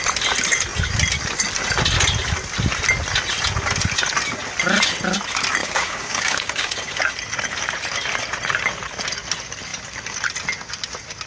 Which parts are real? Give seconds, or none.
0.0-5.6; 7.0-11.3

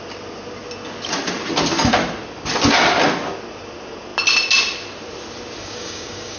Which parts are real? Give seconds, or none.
0.0-5.6

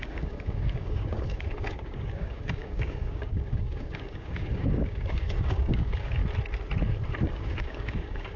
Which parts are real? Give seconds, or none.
6.2-7.3

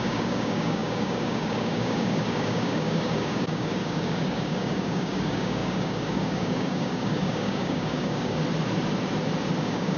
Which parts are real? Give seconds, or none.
8.4-9.6

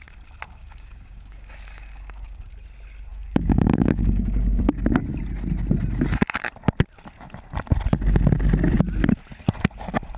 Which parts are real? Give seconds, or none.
0.0-0.6; 2.5-3.1; 4.6-10.2

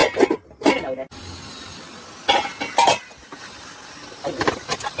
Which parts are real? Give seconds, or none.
0.0-5.0

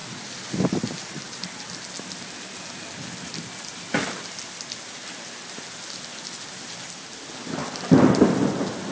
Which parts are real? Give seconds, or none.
0.0-8.9

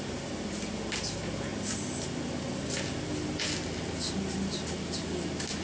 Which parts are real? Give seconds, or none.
0.0-5.6